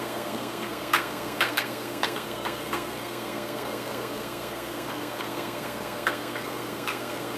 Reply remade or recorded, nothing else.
remade